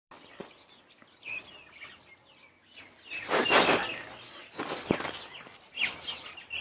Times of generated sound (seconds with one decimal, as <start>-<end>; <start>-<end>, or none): none